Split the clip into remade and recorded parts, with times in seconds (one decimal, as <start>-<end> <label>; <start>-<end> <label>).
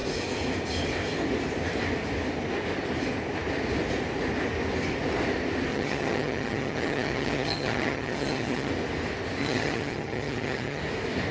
0.0-5.7 recorded; 5.7-8.7 remade; 8.7-9.4 recorded; 9.4-10.8 remade; 10.8-11.3 recorded